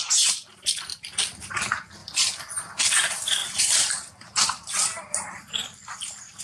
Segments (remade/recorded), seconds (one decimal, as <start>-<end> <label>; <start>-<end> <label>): 0.0-0.9 recorded; 0.9-1.5 remade; 1.5-3.4 recorded; 3.4-6.4 remade